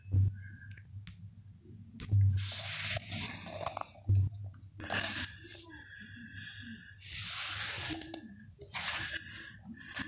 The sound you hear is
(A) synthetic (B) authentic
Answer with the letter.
B